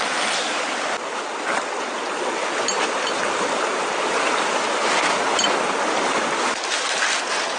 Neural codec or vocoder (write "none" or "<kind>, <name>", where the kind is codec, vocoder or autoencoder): none